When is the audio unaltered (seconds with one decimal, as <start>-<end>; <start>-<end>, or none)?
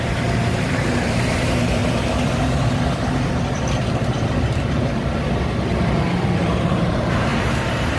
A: 1.8-6.6